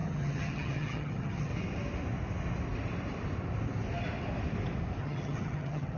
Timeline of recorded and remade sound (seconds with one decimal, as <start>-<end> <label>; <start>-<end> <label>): 0.0-1.5 remade; 1.5-5.0 recorded; 5.0-6.0 remade